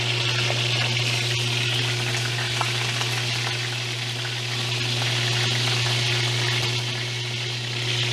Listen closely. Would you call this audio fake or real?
real